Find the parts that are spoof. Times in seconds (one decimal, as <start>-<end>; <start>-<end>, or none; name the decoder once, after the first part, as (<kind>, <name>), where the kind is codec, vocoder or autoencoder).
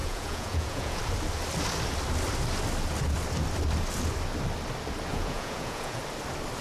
0.0-1.0 (vocoder, Vocos); 5.1-6.0